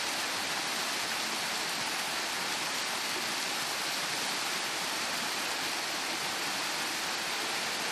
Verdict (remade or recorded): recorded